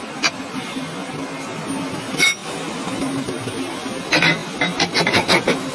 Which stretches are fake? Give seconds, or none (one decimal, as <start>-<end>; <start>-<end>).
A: 4.4-5.7